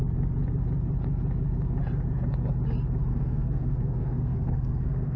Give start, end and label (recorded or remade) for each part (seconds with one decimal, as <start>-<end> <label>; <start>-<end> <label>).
0.0-3.1 recorded; 3.1-5.2 remade